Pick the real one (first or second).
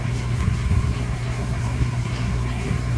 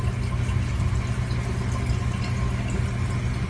second